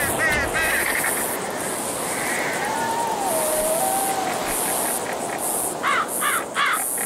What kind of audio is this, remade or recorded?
recorded